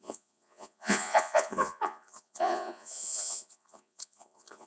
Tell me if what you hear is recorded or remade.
remade